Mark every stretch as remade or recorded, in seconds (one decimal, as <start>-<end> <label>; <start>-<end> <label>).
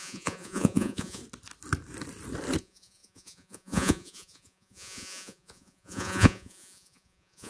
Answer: 0.0-1.2 remade; 1.2-2.6 recorded; 2.6-7.5 remade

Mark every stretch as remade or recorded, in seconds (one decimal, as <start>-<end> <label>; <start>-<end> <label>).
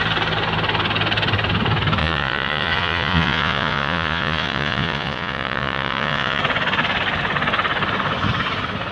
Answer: 0.0-2.0 recorded; 2.0-6.4 remade; 6.4-8.9 recorded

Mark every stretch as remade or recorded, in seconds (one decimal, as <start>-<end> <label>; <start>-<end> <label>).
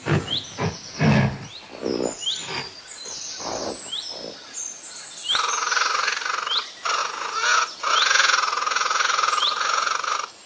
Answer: 0.0-1.0 remade; 1.0-7.0 recorded; 7.0-10.1 remade; 10.1-10.5 recorded